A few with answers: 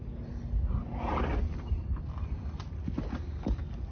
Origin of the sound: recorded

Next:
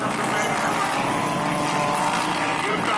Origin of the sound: recorded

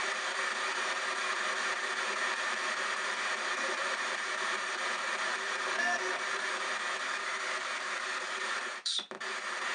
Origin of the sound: remade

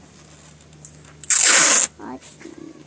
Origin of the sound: recorded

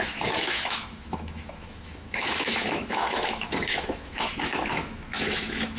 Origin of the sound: remade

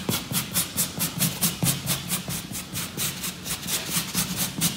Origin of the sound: recorded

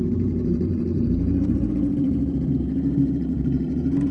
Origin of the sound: remade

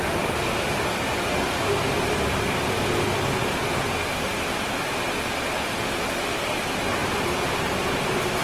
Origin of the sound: recorded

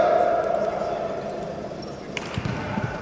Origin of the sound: recorded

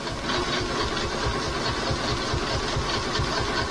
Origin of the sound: recorded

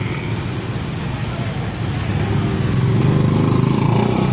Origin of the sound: recorded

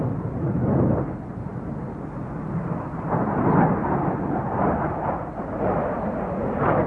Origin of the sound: recorded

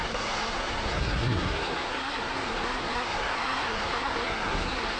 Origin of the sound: remade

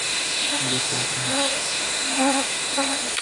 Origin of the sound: remade